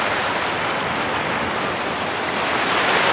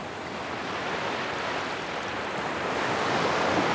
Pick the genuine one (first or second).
first